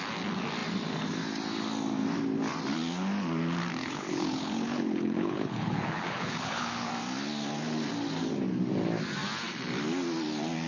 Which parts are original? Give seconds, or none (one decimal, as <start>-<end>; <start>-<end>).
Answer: 0.0-3.8; 6.9-10.7